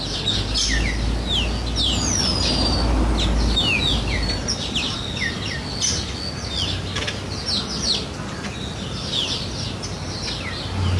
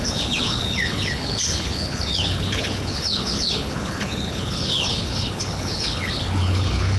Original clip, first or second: first